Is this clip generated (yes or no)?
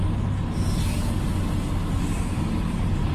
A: no